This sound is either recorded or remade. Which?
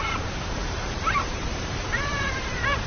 remade